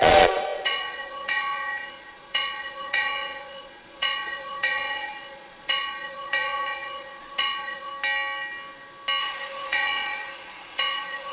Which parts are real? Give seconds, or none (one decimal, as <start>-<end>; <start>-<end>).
7.9-9.2